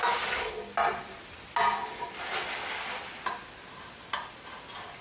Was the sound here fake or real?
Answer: real